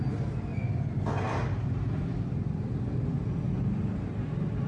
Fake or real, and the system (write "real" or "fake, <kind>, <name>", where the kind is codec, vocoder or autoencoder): real